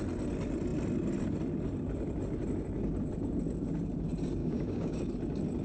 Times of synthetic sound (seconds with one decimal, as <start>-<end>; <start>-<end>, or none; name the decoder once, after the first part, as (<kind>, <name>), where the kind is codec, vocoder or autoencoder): 4.4-5.1 (codec, DAC)